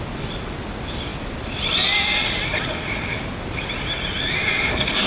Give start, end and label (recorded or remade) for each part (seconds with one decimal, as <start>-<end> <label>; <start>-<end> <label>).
0.0-5.1 recorded